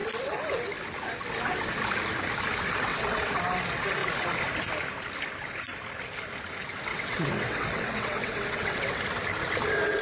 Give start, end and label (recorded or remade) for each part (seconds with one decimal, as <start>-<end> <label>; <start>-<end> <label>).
0.0-2.9 recorded; 2.9-3.4 remade; 3.4-6.9 recorded; 6.9-9.0 remade; 9.0-10.0 recorded